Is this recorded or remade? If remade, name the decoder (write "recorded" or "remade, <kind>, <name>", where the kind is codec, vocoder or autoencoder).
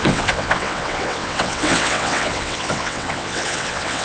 remade, vocoder, WaveNeXt